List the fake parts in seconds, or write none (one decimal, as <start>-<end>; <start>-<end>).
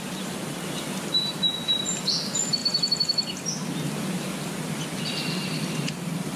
none